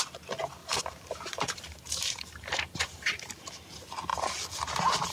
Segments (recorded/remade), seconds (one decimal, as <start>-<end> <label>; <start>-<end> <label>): 0.0-0.6 recorded; 0.6-3.3 remade; 3.3-5.1 recorded